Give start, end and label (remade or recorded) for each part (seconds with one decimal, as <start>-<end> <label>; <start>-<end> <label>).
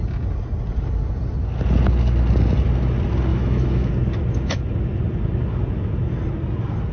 0.0-3.3 recorded; 3.3-3.9 remade; 3.9-6.9 recorded